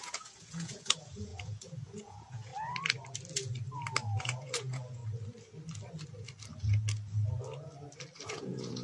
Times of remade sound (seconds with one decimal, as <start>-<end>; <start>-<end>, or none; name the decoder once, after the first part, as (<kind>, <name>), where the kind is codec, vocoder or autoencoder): 0.0-2.5 (vocoder, Vocos); 4.2-5.0; 8.3-8.8